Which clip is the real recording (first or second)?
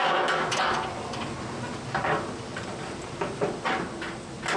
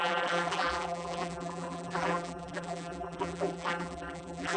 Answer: first